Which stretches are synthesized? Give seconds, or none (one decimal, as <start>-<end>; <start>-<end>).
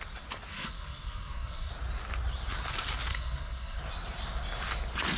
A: 0.5-1.7; 3.1-3.8